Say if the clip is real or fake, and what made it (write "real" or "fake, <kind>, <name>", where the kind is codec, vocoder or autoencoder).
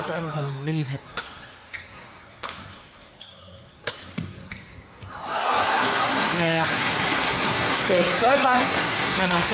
fake, codec, SNAC